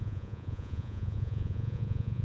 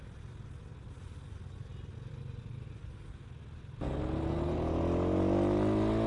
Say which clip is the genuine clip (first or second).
second